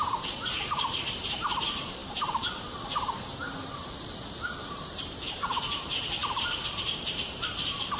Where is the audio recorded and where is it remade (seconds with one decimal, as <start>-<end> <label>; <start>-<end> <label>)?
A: 0.0-3.7 remade; 3.7-4.7 recorded; 4.7-6.2 remade; 6.2-6.8 recorded; 6.8-8.0 remade